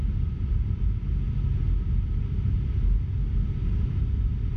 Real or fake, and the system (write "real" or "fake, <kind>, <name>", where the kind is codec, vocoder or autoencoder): real